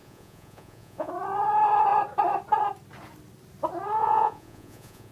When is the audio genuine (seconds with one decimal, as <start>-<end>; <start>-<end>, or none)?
1.1-4.0